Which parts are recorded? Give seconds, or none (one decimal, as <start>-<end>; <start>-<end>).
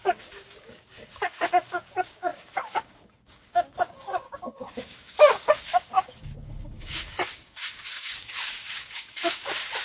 none